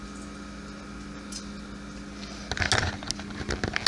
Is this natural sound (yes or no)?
yes